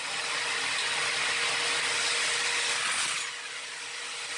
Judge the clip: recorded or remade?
recorded